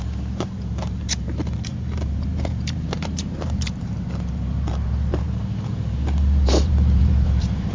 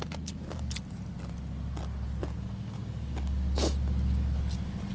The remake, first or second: first